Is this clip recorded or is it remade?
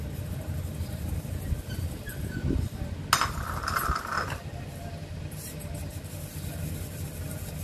recorded